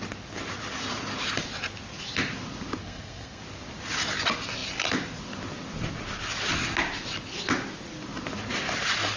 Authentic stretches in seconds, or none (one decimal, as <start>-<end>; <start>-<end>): 0.0-2.8; 3.4-9.2